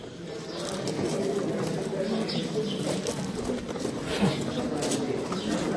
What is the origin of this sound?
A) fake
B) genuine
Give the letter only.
B